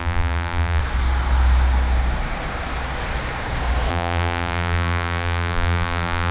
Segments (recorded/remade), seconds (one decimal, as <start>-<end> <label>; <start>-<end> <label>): 0.0-0.8 remade; 0.8-3.9 recorded; 3.9-6.3 remade